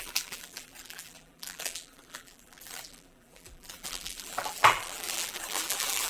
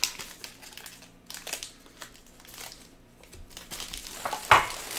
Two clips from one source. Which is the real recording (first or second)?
second